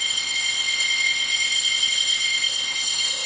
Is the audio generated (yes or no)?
yes